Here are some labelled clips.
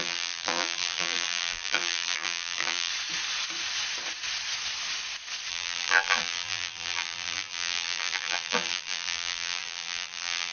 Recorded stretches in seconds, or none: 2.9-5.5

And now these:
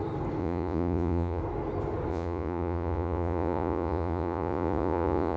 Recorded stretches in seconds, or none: 0.0-0.4; 1.4-2.1